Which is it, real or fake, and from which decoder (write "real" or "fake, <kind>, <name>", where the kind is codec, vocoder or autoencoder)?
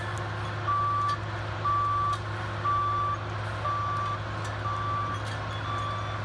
real